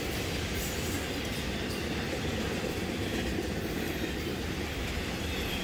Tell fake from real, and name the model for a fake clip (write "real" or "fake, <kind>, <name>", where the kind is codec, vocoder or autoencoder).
real